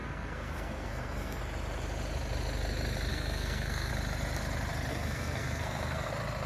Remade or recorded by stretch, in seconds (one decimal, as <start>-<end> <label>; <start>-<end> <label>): 0.0-1.4 remade; 1.4-3.1 recorded; 3.1-3.9 remade; 3.9-4.9 recorded; 4.9-6.1 remade; 6.1-6.5 recorded